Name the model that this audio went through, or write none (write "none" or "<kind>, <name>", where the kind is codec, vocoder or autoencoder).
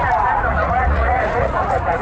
vocoder, Vocos